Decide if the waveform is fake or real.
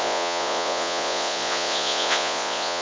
fake